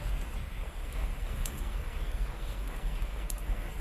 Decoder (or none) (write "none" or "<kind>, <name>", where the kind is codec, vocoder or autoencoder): codec, SNAC